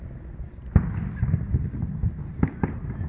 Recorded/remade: recorded